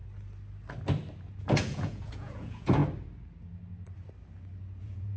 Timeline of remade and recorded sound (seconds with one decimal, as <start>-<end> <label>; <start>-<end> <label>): 0.0-1.4 recorded; 1.4-2.8 remade; 2.8-4.8 recorded; 4.8-5.2 remade